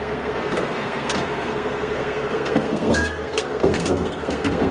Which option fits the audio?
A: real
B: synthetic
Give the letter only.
B